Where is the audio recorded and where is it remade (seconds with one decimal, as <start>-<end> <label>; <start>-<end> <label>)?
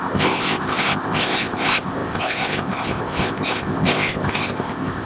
0.0-5.1 remade